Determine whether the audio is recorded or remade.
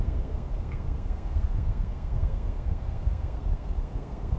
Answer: remade